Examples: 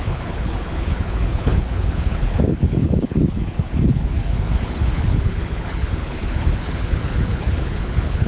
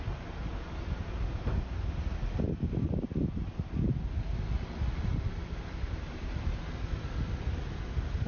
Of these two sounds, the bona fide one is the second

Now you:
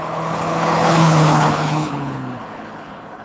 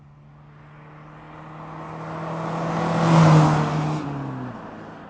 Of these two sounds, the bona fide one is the second